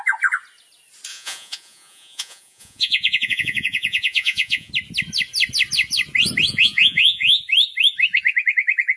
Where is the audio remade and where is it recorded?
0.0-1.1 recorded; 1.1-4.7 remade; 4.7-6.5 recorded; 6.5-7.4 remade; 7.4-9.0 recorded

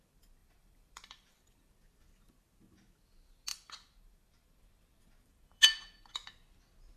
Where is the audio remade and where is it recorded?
0.0-0.4 recorded; 0.4-1.7 remade; 1.7-3.5 recorded; 3.5-5.6 remade; 5.6-7.0 recorded

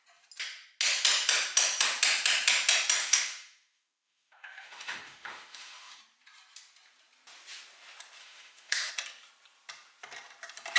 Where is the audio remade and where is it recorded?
0.0-3.0 recorded; 3.0-6.0 remade; 6.0-8.2 recorded; 8.2-8.9 remade; 8.9-10.8 recorded

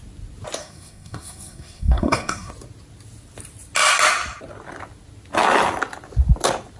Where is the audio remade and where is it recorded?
0.0-0.6 recorded; 0.6-2.5 remade; 2.5-6.8 recorded